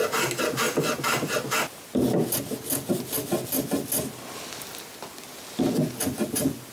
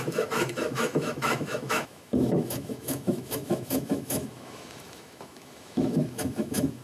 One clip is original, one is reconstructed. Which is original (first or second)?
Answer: first